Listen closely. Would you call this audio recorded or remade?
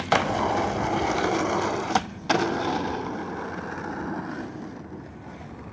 recorded